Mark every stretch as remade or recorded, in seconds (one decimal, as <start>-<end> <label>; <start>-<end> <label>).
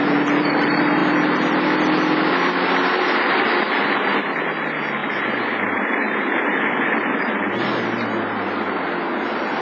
0.0-9.6 recorded